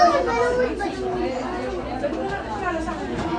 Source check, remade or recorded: recorded